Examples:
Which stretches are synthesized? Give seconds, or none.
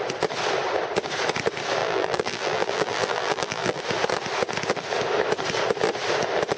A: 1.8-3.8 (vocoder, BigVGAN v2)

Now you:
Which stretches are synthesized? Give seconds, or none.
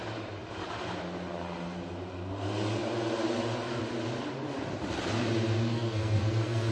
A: 5.6-6.7 (codec, SNAC)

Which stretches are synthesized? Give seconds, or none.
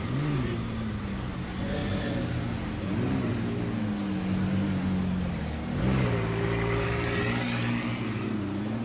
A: none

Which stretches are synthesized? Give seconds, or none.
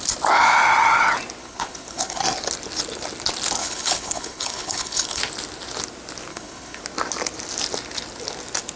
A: 1.4-2.2 (codec, HILCodec); 3.6-5.2; 6.3-6.8